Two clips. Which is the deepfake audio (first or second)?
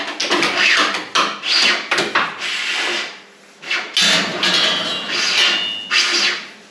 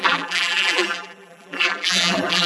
second